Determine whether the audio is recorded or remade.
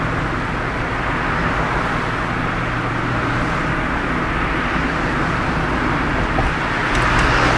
recorded